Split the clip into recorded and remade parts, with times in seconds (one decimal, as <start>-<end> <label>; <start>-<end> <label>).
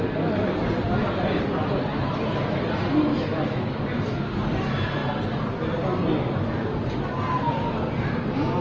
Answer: 0.0-3.1 recorded; 3.1-3.8 remade; 3.8-8.6 recorded